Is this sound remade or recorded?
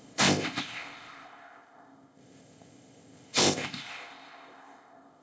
remade